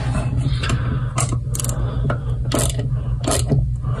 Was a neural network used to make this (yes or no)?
no